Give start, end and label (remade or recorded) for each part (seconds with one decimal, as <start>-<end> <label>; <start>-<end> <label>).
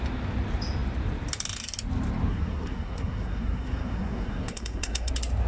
0.0-2.3 recorded; 2.3-5.1 remade; 5.1-5.5 recorded